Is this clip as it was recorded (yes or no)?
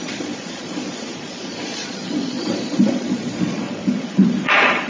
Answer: no